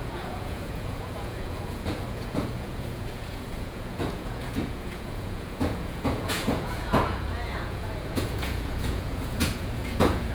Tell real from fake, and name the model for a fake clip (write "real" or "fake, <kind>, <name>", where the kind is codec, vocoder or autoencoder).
fake, vocoder, Vocos